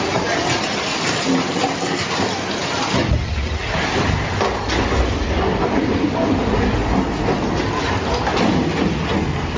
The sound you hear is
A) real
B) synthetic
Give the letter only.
A